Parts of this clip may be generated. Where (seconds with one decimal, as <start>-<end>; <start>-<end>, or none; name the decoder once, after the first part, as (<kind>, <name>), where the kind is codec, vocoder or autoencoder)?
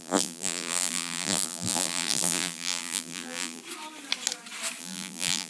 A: 0.0-3.6 (vocoder, BigVGAN v2); 4.8-5.5